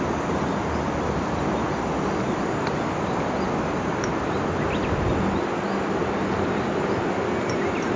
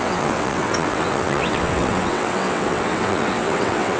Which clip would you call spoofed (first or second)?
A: second